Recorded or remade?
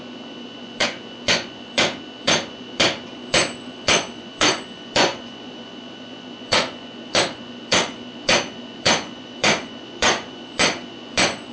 remade